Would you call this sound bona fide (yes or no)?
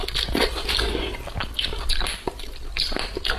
yes